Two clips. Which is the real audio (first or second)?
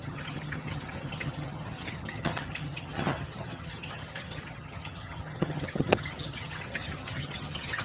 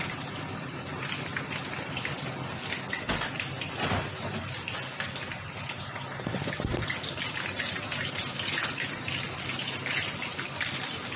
second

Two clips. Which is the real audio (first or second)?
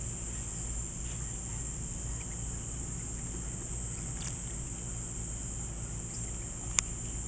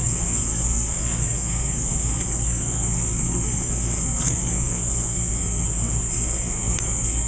first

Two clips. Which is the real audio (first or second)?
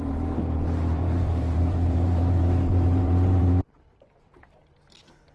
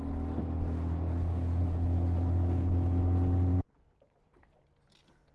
second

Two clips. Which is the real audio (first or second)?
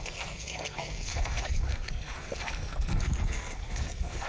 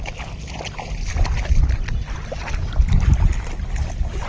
second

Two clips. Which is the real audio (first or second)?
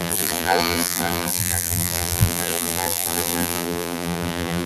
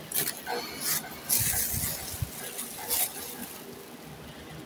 second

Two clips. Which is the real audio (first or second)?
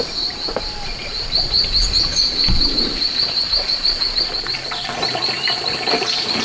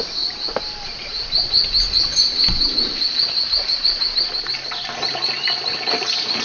second